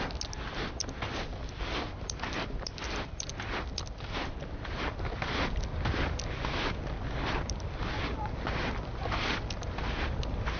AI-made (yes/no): no